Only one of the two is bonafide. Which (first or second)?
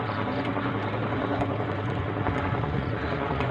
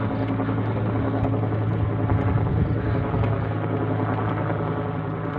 second